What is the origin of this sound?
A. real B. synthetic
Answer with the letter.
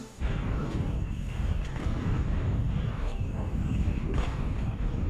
B